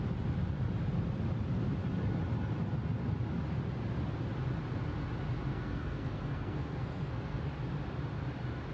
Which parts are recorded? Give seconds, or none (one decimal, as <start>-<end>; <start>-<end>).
0.0-5.5; 7.4-8.7